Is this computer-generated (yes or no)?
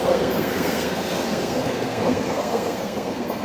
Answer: yes